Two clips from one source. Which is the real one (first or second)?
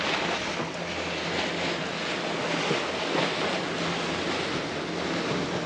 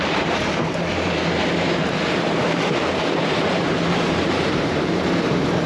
first